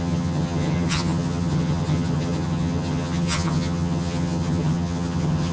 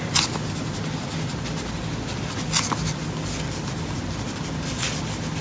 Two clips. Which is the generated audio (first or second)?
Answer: first